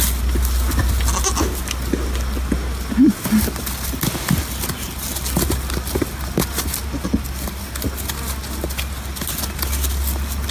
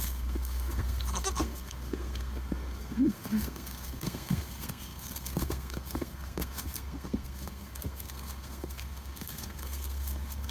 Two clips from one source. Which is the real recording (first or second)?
first